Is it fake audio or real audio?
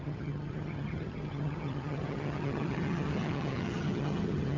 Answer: fake